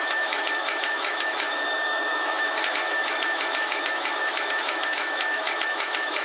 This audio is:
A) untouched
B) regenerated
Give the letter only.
B